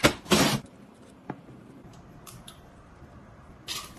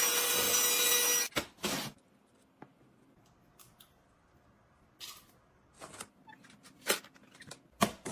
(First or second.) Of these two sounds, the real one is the second